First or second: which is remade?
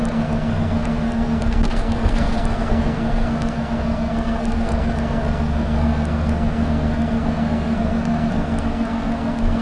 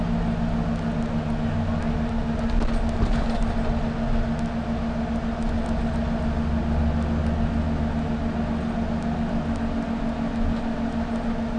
first